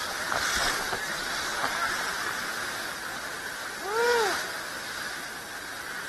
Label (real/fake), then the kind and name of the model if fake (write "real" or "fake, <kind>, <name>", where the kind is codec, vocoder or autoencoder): real